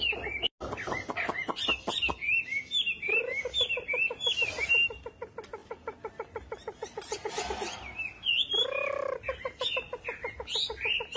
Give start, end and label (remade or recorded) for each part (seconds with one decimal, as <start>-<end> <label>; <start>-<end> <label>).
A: 0.0-11.2 recorded